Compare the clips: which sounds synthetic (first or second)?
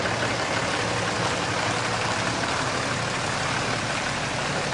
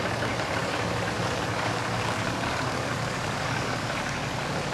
second